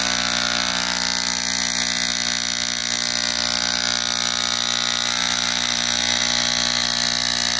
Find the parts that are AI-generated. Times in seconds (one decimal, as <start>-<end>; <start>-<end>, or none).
none